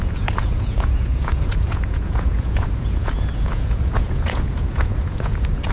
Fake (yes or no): yes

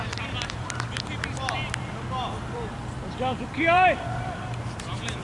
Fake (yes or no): yes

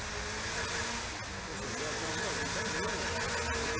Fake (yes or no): no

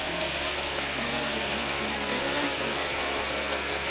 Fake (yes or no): yes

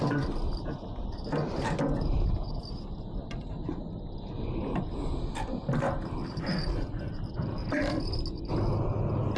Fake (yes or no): no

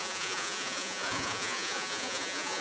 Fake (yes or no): yes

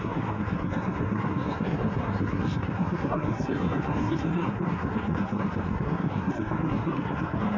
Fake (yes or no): yes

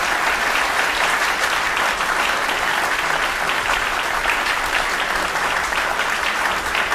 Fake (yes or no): no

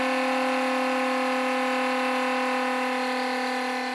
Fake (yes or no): no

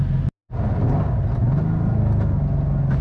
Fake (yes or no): no